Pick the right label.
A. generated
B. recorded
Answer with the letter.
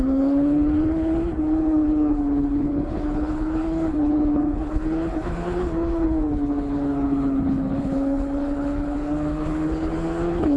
A